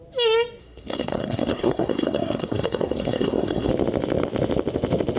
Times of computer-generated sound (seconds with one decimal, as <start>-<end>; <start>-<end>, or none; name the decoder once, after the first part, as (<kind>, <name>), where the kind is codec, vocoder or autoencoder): 0.6-3.7 (codec, SNAC)

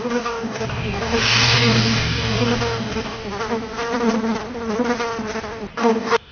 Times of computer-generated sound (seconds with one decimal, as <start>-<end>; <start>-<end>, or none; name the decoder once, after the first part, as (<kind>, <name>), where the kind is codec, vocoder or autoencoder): 0.0-3.2 (codec, DAC); 5.7-6.3

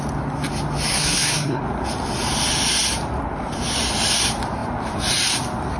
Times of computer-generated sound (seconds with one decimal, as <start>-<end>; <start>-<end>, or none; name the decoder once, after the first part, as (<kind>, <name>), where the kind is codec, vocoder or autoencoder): 0.9-1.6 (codec, SNAC)

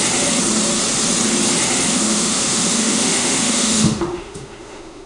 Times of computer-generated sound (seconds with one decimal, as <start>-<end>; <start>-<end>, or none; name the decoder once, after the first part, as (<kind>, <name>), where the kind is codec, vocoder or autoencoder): 1.9-5.1 (autoencoder, DAC-VAE)

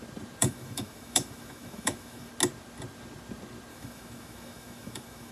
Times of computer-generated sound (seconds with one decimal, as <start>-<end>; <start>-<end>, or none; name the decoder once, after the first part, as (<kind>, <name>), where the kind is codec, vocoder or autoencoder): 0.4-2.3 (autoencoder, DAC-VAE); 3.7-5.3

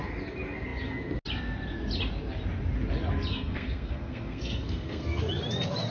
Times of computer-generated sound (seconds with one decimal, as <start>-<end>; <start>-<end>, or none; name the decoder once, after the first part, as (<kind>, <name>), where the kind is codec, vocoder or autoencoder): 3.3-5.2 (codec, SNAC)

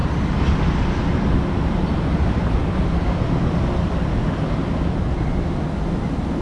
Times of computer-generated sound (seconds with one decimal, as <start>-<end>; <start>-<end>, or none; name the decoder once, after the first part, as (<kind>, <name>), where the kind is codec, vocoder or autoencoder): none